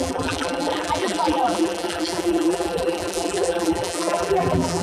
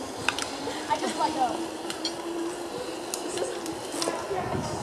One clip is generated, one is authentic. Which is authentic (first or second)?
second